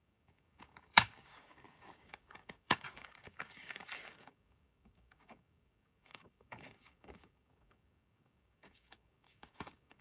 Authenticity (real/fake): fake